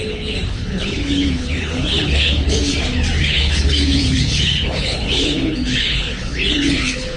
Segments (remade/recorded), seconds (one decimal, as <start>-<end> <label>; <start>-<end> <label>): 0.0-2.6 remade; 2.6-3.2 recorded; 3.2-7.2 remade